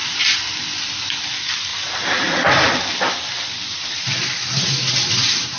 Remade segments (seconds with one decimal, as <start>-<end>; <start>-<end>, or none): 0.0-1.7; 3.4-5.6